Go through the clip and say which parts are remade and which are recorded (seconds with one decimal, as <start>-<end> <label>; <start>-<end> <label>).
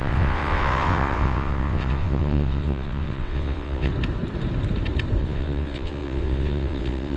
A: 0.0-3.9 remade; 3.9-5.2 recorded; 5.2-7.2 remade